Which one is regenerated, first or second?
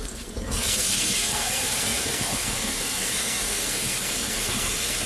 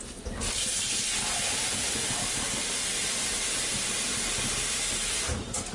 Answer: first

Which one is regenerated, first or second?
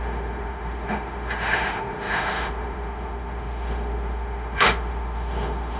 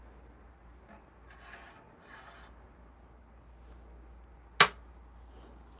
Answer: first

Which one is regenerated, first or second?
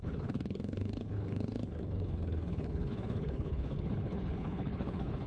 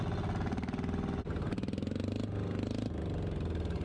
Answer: first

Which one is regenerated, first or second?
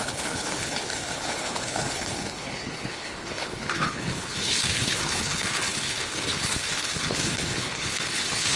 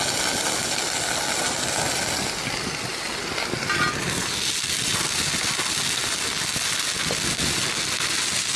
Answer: first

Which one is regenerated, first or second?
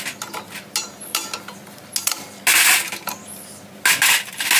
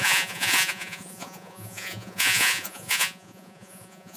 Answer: second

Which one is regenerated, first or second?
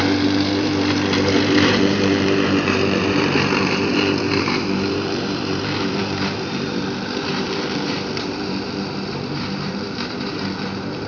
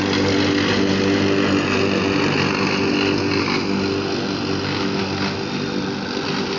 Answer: first